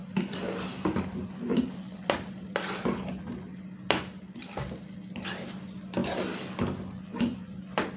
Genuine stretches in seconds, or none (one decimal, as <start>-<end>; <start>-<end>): 0.0-1.0; 3.5-4.5; 6.0-7.2

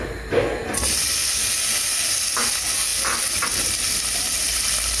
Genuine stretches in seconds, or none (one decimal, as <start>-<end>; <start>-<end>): 0.0-5.0

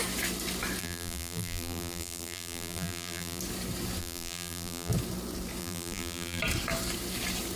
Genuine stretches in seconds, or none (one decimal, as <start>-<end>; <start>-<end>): 0.0-0.8; 3.4-4.0; 4.9-5.6; 6.4-7.6

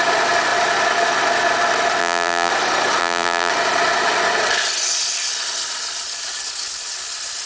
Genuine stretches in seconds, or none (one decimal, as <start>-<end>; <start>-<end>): 0.0-2.0; 2.5-3.0; 3.5-7.5

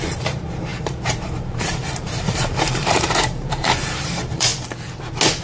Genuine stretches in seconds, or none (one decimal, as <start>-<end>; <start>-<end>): 4.5-5.4